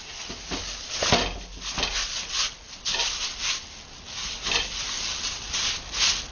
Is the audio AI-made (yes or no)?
no